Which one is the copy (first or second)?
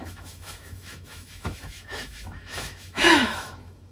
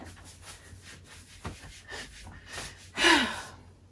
first